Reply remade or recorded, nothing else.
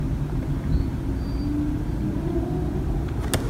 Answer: recorded